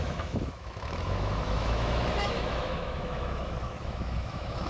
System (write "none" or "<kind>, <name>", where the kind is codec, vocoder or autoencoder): autoencoder, DAC-VAE